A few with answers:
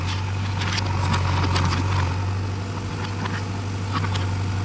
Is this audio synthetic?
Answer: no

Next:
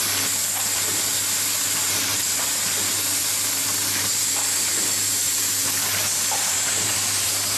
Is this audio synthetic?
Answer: no